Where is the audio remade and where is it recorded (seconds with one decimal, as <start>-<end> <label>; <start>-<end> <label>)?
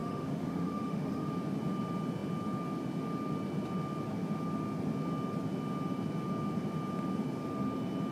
0.0-1.3 remade; 1.3-8.1 recorded